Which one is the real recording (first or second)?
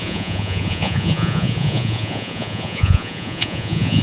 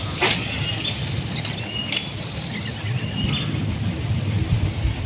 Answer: second